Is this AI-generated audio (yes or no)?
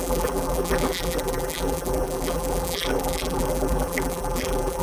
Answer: yes